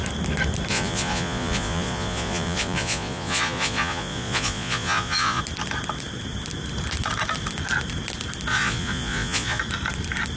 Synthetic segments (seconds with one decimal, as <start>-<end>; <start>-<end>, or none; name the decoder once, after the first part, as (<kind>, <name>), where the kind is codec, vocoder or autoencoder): 0.7-5.4 (vocoder, Vocos); 8.5-9.6